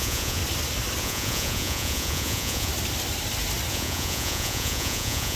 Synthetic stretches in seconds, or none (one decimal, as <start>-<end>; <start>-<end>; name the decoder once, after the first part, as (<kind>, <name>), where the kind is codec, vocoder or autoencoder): 0.0-0.4 (vocoder, Vocos); 1.0-2.7; 3.7-5.4